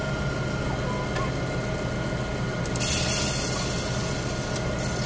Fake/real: real